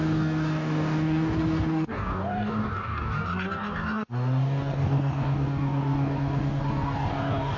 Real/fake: fake